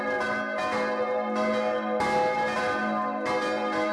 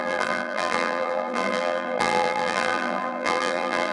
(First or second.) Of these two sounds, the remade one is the second